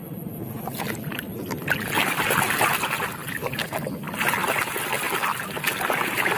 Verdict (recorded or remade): recorded